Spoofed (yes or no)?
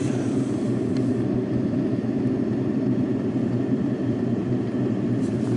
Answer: yes